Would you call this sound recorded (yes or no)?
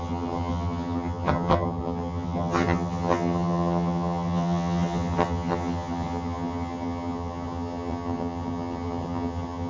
no